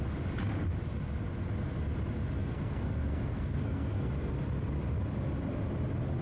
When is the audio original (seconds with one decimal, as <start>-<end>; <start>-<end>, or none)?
0.0-2.4; 4.1-6.2